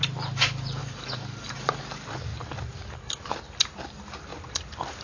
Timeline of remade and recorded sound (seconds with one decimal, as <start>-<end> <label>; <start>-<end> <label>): 0.0-0.8 recorded; 0.8-1.8 remade; 1.8-5.0 recorded